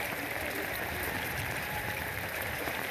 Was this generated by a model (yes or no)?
yes